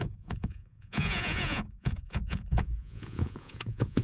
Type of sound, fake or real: fake